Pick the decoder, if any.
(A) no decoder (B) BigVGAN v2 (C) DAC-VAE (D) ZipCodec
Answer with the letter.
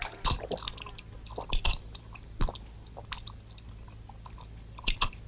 A